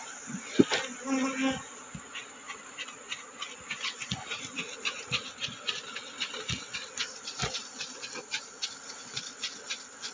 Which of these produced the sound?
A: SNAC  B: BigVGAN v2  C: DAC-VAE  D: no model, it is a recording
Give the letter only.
D